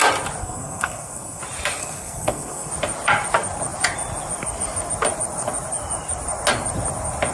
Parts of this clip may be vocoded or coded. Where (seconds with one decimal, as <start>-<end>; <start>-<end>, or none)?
0.4-1.4; 1.8-2.7